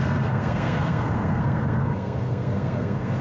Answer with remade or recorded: remade